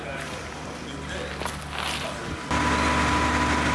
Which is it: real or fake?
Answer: real